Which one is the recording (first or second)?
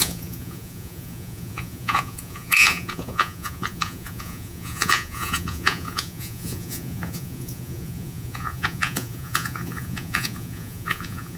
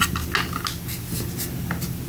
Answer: second